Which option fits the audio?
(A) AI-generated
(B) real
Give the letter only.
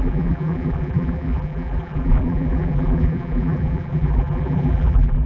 A